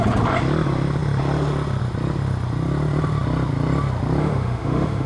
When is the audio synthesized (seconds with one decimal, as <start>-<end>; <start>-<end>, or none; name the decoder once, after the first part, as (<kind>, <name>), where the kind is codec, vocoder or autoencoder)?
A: 4.2-5.1 (autoencoder, DAC-VAE)